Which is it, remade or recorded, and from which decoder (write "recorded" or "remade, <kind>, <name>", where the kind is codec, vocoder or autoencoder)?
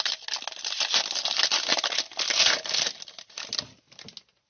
recorded